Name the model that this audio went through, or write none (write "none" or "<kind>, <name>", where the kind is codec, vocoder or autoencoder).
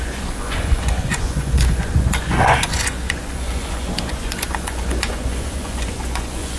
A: vocoder, Vocos